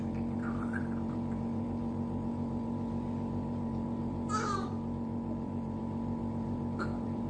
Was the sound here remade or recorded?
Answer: remade